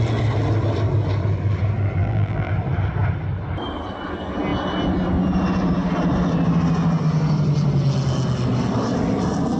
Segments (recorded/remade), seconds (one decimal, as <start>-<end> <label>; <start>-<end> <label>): 0.0-2.0 recorded; 2.0-2.5 remade; 2.5-9.6 recorded